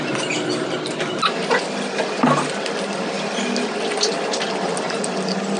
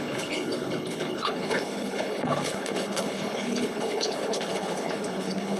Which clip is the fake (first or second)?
second